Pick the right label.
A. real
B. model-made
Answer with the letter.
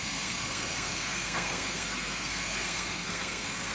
B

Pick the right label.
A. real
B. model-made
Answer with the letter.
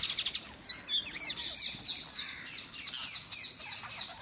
A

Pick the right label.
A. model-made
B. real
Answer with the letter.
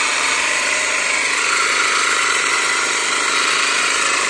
A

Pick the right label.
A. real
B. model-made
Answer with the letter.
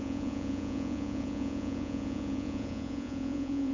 B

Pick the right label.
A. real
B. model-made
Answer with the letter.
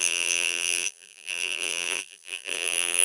B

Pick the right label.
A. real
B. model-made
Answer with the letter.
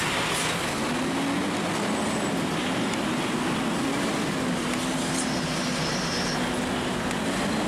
A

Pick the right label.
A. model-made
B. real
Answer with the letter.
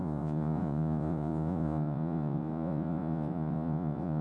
A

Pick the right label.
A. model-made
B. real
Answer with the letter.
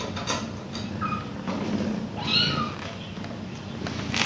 B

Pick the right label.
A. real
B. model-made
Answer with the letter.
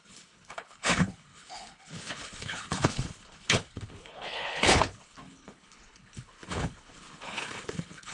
B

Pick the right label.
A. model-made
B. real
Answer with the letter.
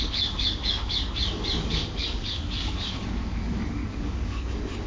A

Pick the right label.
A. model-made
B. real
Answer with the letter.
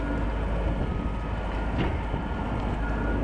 B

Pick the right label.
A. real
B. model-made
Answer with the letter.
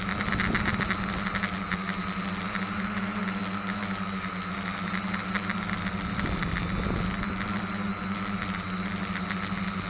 A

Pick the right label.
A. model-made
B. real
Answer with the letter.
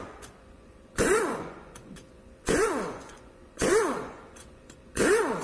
A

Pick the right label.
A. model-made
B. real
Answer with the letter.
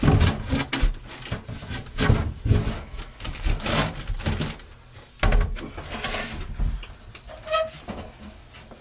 B